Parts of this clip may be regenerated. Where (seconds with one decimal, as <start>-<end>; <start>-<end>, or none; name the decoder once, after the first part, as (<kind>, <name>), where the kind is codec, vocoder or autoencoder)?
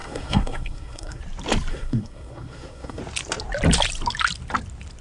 0.0-1.2 (codec, SNAC); 1.7-3.0